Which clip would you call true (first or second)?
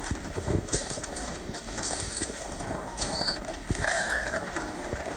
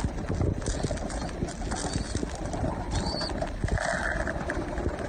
second